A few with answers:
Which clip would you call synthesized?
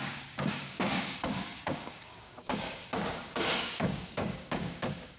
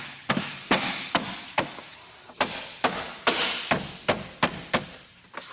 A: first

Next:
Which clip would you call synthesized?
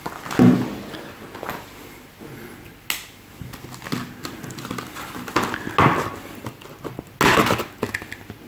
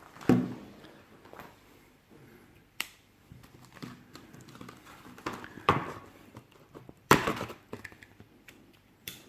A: second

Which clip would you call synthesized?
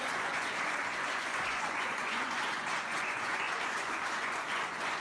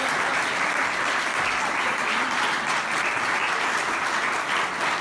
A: first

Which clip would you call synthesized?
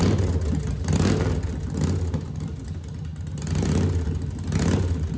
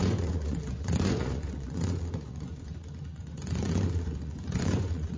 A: second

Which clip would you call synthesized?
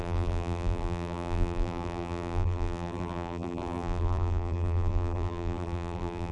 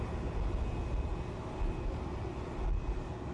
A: first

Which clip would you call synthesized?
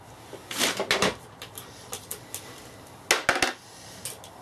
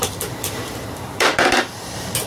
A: second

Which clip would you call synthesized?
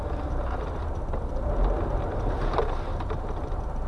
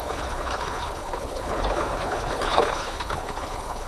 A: second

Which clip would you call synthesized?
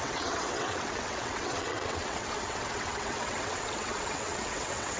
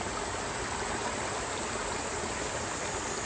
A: first